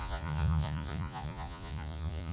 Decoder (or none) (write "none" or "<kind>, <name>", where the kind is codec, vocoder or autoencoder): vocoder, Vocos